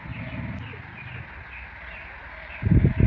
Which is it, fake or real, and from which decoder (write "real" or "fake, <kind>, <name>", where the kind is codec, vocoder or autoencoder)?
real